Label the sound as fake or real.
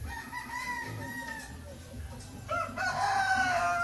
real